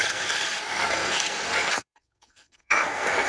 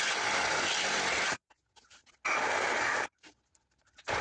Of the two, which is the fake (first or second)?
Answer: first